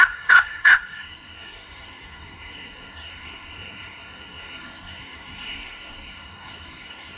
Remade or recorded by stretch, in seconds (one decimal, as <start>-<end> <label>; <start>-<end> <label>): 0.0-7.2 remade